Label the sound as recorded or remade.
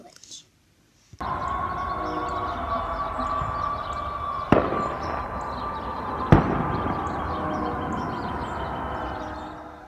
recorded